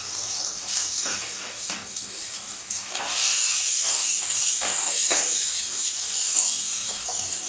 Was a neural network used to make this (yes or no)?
yes